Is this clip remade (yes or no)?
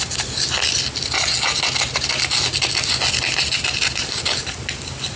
no